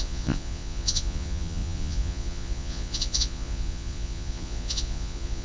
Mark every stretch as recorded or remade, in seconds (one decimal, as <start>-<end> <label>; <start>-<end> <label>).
0.0-5.4 remade